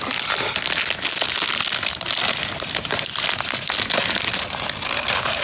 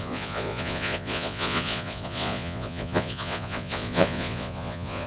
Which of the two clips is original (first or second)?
first